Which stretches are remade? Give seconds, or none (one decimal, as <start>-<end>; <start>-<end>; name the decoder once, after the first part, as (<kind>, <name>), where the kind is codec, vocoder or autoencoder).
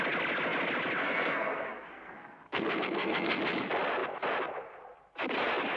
1.0-3.4 (codec, SNAC)